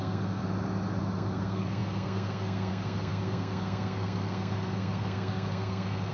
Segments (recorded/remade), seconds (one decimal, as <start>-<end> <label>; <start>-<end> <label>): 0.0-0.4 remade; 0.4-1.0 recorded; 1.0-6.1 remade